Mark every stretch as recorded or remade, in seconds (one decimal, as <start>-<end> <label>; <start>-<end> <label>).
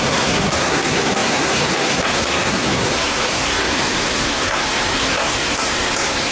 0.0-6.3 remade